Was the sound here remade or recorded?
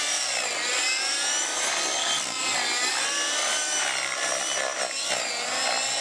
recorded